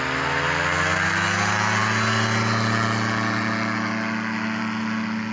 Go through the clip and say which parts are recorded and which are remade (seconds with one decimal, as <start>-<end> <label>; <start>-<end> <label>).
0.0-5.3 recorded